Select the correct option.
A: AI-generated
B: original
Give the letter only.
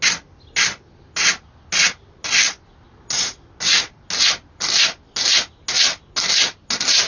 B